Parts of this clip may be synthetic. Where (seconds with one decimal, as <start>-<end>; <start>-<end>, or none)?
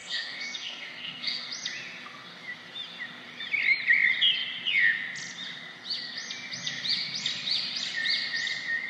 0.0-1.5